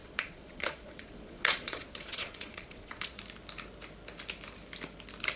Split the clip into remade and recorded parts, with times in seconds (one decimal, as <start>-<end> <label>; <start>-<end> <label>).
0.0-3.2 remade; 3.2-5.4 recorded